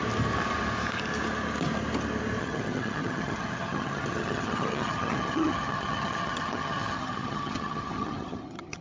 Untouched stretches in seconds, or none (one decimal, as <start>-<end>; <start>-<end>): 0.0-2.4